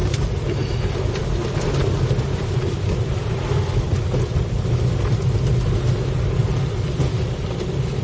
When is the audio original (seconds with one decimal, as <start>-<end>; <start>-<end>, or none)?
0.0-8.0